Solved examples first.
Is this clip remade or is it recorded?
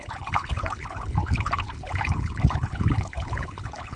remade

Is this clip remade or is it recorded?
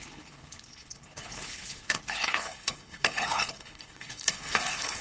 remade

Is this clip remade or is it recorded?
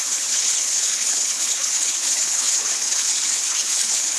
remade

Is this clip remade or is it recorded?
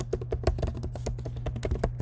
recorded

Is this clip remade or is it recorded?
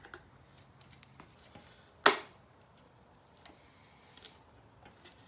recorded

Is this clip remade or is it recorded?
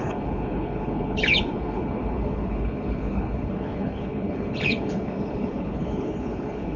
remade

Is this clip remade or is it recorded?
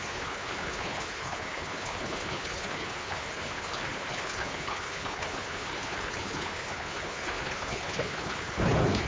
remade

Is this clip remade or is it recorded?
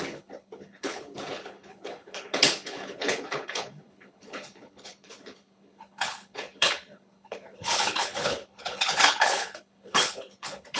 remade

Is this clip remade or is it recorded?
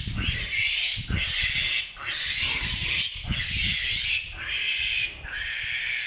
recorded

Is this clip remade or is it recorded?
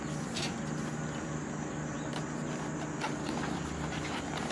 recorded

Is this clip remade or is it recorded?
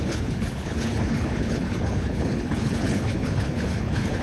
remade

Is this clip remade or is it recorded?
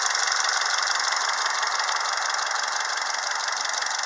recorded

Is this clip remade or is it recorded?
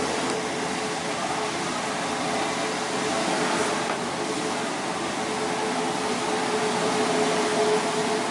recorded